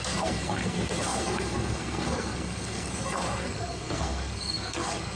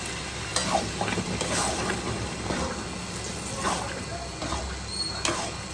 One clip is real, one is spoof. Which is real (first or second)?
second